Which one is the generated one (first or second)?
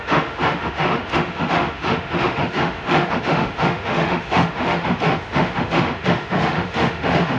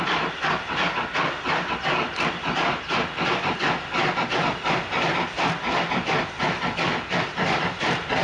first